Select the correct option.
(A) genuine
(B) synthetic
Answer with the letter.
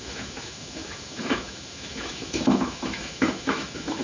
B